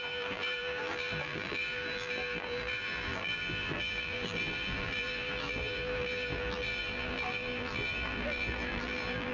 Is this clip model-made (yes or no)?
yes